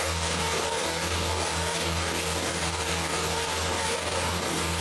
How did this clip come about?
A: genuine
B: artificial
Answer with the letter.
B